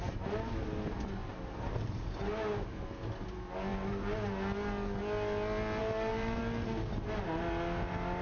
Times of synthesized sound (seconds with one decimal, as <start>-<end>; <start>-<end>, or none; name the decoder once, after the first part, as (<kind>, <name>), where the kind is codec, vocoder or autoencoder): 1.2-2.2 (vocoder, BigVGAN v2); 5.8-6.4